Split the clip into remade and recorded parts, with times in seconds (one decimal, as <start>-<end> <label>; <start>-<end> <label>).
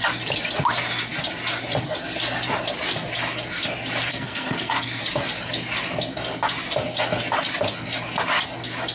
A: 0.0-4.1 recorded; 4.1-5.0 remade; 5.0-8.9 recorded